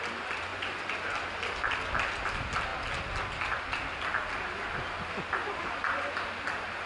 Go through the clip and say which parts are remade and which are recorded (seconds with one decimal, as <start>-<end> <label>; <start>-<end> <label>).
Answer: 0.0-0.5 recorded; 0.5-1.0 remade; 1.0-6.9 recorded